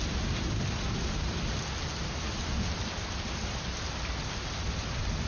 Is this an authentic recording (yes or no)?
yes